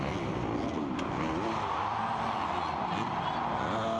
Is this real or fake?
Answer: real